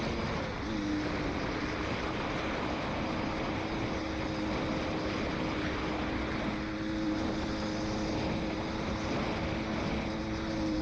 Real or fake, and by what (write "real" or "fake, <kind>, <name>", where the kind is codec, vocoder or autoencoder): real